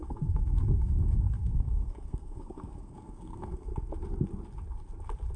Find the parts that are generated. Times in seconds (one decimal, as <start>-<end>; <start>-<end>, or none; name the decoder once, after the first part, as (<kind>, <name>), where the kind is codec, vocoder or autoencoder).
0.0-3.7 (codec, SNAC)